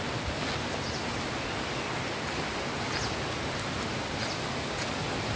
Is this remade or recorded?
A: recorded